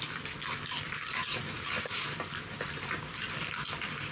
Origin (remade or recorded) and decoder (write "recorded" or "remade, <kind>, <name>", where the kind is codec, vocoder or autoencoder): recorded